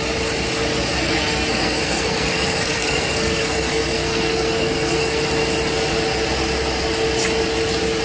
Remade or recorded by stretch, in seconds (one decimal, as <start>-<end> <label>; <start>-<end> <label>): 0.0-1.0 recorded; 1.0-5.2 remade; 5.2-8.0 recorded